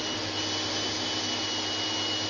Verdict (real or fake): real